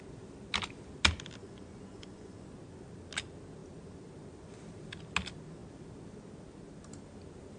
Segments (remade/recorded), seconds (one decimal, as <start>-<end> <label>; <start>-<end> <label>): 0.0-1.4 recorded; 1.4-2.5 remade; 2.5-7.6 recorded